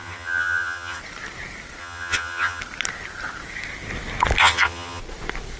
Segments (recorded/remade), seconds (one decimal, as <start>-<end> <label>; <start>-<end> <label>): 0.0-1.0 remade; 1.0-1.8 recorded; 1.8-2.6 remade; 2.6-4.4 recorded; 4.4-5.0 remade; 5.0-5.6 recorded